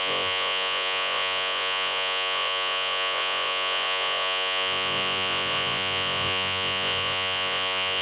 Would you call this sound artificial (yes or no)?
yes